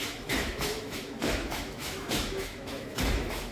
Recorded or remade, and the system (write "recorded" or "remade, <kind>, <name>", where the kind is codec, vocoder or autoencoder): remade, autoencoder, DAC-VAE